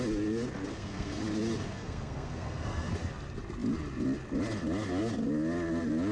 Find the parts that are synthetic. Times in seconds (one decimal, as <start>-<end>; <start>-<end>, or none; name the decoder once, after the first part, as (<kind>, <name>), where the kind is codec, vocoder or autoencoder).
0.7-1.2 (codec, SNAC); 1.7-2.9